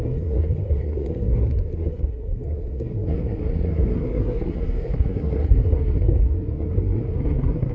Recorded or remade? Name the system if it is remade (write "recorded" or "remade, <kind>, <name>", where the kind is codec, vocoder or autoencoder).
remade, codec, SNAC